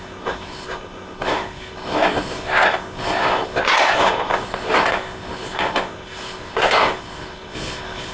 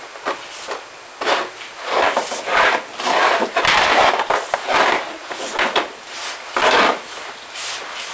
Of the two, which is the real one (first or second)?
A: second